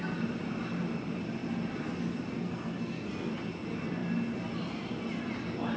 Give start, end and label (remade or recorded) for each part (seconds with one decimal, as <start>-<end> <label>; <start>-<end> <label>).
0.0-2.4 recorded; 2.4-3.3 remade; 3.3-5.8 recorded